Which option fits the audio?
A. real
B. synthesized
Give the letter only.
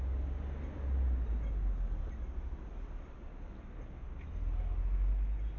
A